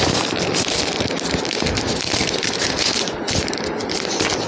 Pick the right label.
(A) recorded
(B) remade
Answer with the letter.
A